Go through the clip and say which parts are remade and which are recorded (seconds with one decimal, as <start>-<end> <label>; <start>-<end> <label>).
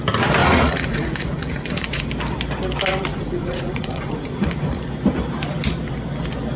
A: 0.0-0.4 recorded; 0.4-2.1 remade; 2.1-3.1 recorded; 3.1-4.8 remade; 4.8-6.6 recorded